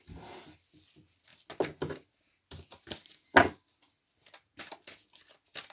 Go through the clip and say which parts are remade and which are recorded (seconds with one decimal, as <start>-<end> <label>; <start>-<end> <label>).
0.0-5.7 recorded